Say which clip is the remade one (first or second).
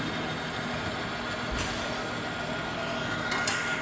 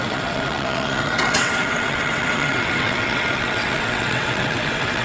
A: second